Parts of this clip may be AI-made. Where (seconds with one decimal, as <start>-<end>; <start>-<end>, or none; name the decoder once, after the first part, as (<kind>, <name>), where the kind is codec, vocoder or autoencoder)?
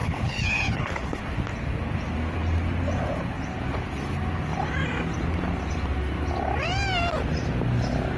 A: 0.0-1.2 (codec, HILCodec)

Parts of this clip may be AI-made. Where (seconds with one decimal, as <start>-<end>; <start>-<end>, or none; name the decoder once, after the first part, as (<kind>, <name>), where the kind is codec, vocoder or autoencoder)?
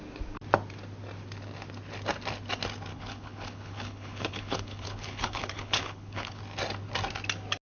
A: 2.9-6.4 (codec, HILCodec)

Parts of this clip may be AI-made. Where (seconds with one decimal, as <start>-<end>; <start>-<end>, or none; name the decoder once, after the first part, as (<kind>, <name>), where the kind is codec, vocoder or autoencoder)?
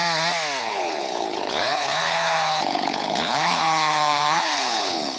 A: 0.6-5.2 (codec, HILCodec)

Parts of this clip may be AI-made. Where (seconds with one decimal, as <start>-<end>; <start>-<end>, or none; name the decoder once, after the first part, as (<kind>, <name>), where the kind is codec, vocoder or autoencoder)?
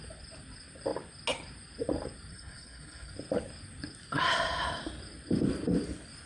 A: 2.3-3.1 (codec, HILCodec)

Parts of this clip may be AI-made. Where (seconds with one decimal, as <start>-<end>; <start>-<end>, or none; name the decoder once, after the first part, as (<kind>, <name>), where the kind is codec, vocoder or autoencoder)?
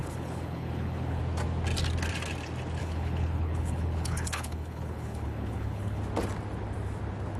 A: 0.0-1.2 (codec, HILCodec); 2.8-6.0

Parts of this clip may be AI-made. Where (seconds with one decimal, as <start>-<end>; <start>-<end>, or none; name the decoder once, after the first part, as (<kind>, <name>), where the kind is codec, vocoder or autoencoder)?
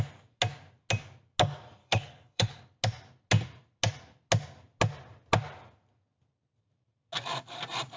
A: 1.8-2.6 (codec, HILCodec)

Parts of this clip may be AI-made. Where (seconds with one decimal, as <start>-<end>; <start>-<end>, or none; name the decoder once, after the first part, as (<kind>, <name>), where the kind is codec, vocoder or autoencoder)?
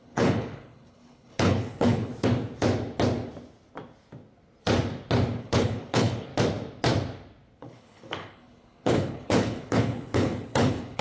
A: 0.0-2.1 (codec, HILCodec); 5.4-6.3; 7.6-11.0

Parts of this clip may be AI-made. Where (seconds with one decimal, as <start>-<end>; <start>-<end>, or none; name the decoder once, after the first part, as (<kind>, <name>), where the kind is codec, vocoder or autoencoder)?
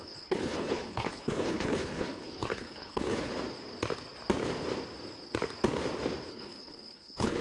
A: 0.0-3.3 (codec, HILCodec); 6.3-7.4